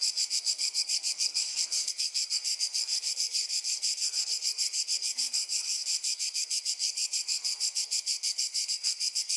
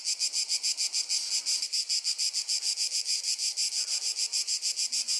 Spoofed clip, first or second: first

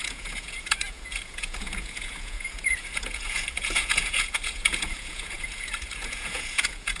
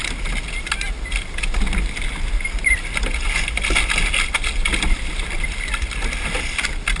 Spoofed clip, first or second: first